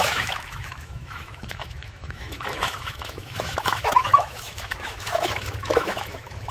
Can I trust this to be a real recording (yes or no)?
no